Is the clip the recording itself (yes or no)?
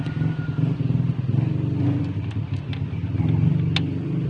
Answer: yes